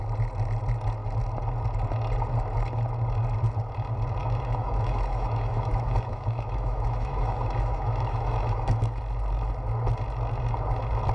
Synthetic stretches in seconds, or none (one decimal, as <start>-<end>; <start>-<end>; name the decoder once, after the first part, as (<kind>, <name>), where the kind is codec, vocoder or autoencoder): 4.2-9.0 (autoencoder, DAC-VAE)